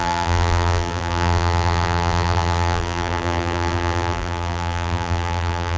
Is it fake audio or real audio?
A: fake